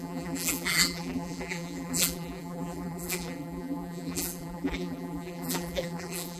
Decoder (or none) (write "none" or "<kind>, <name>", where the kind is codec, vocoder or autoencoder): vocoder, BigVGAN v2